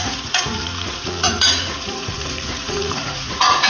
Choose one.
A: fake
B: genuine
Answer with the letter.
A